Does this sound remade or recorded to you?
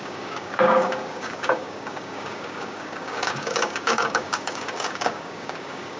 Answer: remade